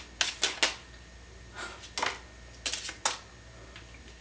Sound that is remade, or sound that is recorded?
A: recorded